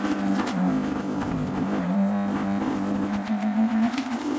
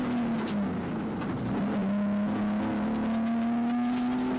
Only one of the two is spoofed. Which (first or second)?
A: first